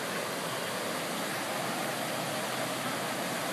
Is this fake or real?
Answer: real